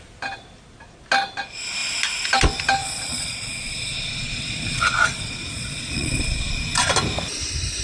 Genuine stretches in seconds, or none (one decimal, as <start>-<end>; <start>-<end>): 0.0-2.8; 6.5-7.8